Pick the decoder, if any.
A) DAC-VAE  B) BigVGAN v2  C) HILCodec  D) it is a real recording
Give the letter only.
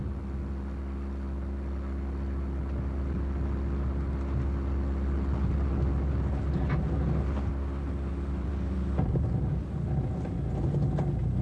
D